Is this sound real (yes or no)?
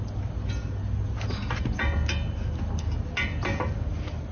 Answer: yes